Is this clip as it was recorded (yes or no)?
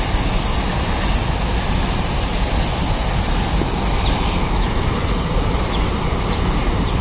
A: yes